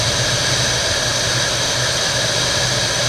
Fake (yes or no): no